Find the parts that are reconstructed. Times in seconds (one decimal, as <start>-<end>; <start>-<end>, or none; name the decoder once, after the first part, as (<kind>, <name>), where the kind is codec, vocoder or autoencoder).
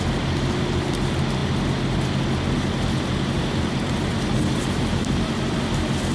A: none